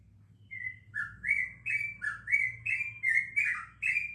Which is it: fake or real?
real